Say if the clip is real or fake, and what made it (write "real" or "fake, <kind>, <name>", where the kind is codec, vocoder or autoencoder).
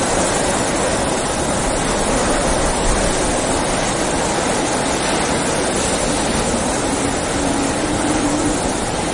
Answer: real